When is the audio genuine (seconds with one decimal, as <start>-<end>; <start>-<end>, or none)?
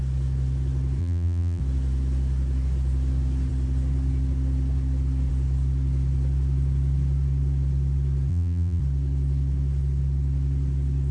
0.0-1.0; 1.6-8.3; 8.8-11.1